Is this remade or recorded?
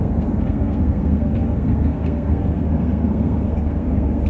remade